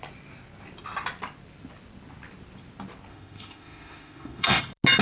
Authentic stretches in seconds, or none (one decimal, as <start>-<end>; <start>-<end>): 0.0-3.1; 4.6-5.0